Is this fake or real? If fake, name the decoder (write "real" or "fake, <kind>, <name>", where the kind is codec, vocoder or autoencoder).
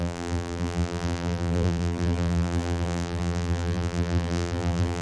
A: fake, vocoder, BigVGAN v2